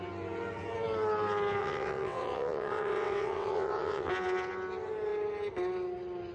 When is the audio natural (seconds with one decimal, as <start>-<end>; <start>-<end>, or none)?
0.0-1.6; 4.1-6.3